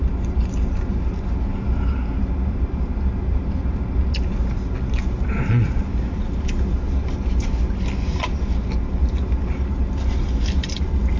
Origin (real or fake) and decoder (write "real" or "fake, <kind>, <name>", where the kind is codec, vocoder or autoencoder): real